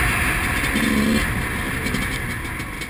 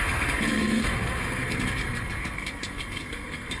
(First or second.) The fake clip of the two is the second